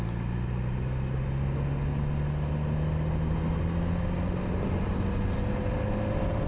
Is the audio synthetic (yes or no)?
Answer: no